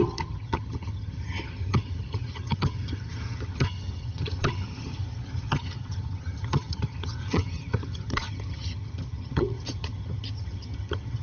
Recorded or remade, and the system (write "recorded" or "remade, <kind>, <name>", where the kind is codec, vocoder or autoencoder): remade, vocoder, HiFi-GAN